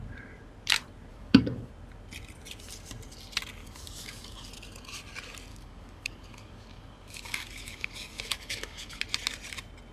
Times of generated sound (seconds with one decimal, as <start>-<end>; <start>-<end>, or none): 1.1-1.7; 3.6-4.5; 5.5-9.0